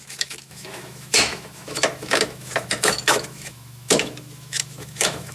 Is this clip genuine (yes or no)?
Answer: no